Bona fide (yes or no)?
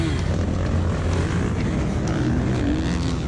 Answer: yes